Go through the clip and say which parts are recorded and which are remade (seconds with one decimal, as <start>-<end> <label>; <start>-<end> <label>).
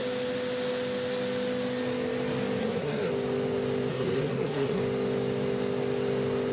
0.0-2.6 recorded; 2.6-3.1 remade; 3.1-3.9 recorded; 3.9-4.8 remade; 4.8-6.5 recorded